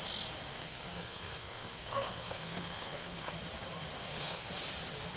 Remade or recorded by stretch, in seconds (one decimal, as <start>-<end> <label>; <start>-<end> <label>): 0.0-0.5 recorded; 0.5-3.3 remade; 3.3-4.0 recorded; 4.0-4.5 remade; 4.5-5.2 recorded